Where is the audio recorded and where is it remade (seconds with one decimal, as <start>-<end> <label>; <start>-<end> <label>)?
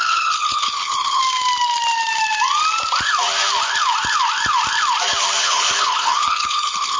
0.0-1.2 remade; 1.2-5.4 recorded; 5.4-7.0 remade